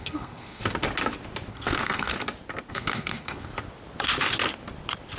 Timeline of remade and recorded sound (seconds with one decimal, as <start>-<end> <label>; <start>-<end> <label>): 0.0-0.6 remade; 0.6-1.5 recorded; 1.5-2.1 remade; 2.1-2.7 recorded; 2.7-3.5 remade; 3.5-5.2 recorded